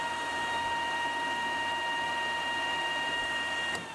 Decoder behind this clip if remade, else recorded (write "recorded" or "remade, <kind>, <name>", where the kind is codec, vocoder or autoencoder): remade, vocoder, BigVGAN v2